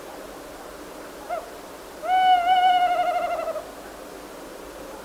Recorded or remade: recorded